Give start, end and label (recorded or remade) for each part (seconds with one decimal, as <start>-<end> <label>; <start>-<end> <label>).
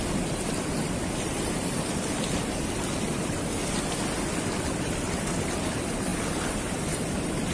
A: 0.0-3.6 remade; 3.6-5.0 recorded; 5.0-7.5 remade